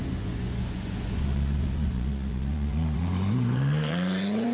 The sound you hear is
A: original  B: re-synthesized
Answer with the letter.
B